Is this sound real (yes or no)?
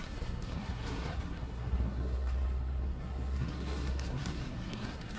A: no